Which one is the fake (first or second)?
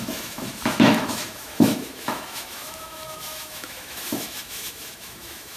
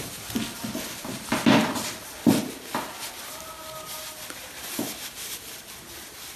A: first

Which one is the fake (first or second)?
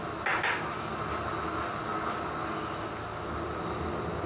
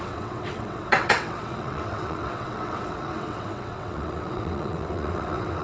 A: second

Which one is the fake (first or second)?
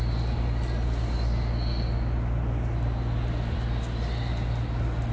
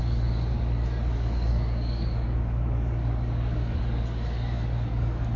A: second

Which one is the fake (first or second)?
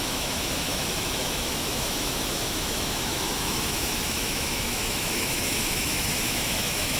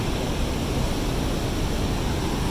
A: first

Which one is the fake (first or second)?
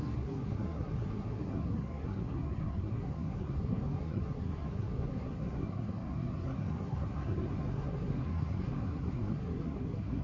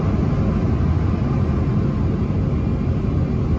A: first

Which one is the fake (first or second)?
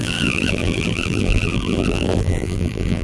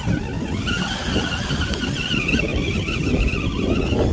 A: first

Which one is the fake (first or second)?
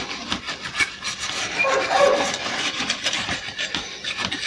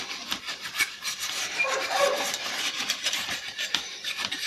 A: second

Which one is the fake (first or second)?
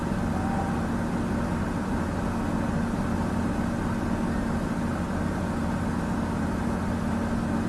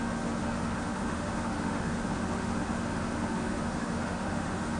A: second